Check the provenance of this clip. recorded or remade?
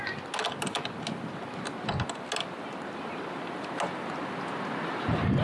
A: recorded